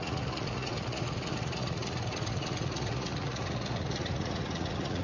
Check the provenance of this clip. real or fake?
fake